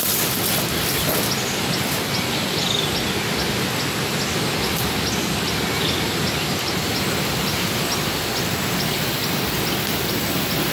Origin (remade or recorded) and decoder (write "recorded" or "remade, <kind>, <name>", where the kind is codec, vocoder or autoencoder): recorded